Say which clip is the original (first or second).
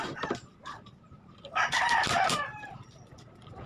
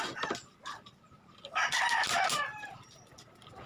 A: second